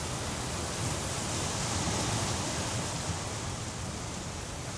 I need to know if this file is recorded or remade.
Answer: recorded